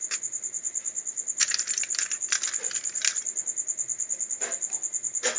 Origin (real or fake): real